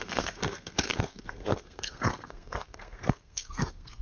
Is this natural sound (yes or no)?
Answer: no